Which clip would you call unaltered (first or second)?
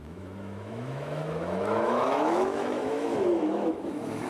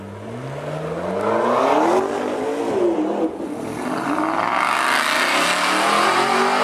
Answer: second